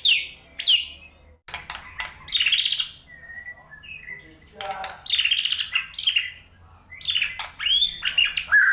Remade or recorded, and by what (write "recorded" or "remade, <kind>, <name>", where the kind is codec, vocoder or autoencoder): recorded